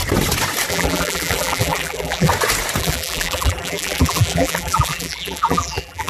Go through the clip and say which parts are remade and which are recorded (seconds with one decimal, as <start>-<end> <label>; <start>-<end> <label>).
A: 0.0-0.7 recorded; 0.7-2.3 remade; 2.3-2.8 recorded; 2.8-6.1 remade